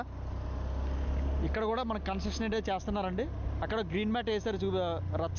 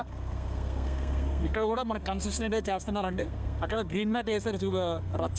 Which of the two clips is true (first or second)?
first